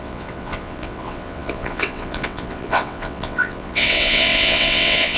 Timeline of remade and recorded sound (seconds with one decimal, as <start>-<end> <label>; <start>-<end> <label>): 0.0-5.2 remade